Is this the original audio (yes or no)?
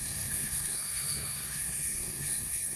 no